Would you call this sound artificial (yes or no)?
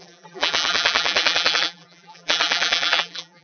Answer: yes